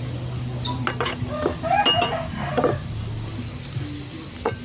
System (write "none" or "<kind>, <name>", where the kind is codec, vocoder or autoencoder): none